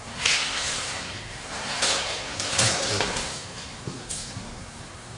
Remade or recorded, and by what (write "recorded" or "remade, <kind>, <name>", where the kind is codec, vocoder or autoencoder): remade, codec, SNAC